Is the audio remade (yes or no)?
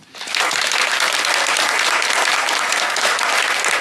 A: no